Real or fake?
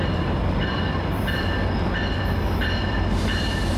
fake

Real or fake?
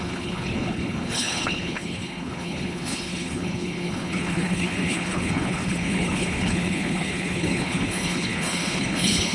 fake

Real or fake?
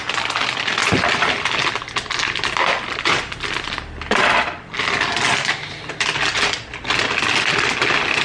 real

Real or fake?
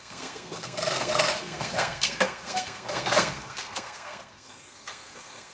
fake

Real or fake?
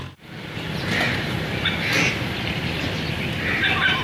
real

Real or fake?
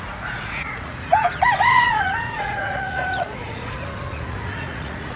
fake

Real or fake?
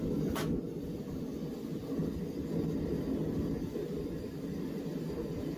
real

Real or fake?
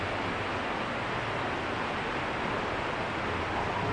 real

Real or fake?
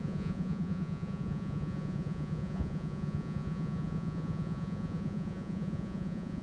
fake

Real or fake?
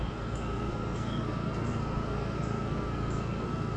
fake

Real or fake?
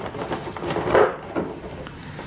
real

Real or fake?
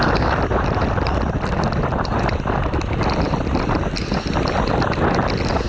real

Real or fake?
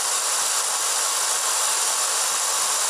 real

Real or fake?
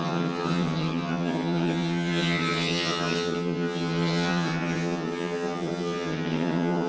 fake